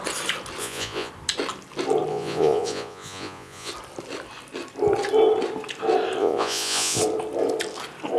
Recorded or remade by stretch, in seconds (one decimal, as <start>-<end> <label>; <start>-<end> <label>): 0.0-0.6 recorded; 0.6-1.1 remade; 1.1-2.1 recorded; 2.1-3.7 remade; 3.7-6.2 recorded; 6.2-7.0 remade; 7.0-8.2 recorded